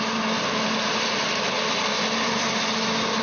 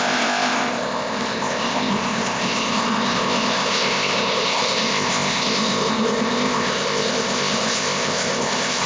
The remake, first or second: second